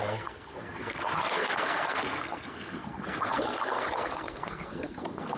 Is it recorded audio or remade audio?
remade